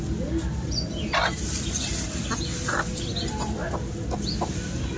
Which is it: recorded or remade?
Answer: recorded